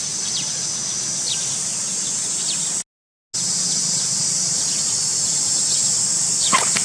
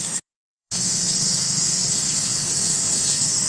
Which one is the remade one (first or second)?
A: second